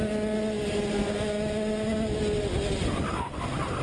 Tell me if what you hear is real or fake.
real